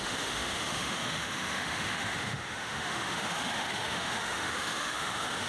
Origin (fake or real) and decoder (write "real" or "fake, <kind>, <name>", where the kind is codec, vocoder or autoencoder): fake, autoencoder, DAC-VAE